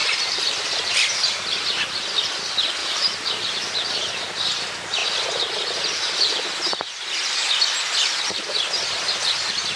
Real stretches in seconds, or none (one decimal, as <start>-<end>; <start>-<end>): 1.0-2.8; 3.7-9.8